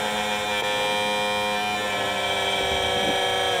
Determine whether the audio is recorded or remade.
recorded